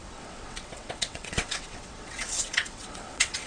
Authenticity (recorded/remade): remade